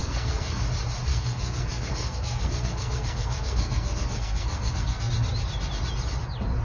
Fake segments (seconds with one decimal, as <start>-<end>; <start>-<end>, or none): 0.0-0.6; 1.1-5.1